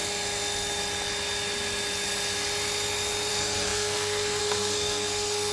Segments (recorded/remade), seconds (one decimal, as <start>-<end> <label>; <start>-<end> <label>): 0.0-3.3 recorded; 3.3-5.5 remade